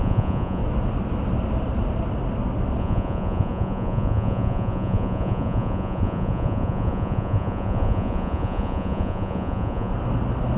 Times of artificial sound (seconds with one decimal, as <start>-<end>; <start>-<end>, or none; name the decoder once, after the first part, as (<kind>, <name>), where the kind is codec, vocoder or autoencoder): 0.0-0.6 (vocoder, Vocos); 2.8-9.9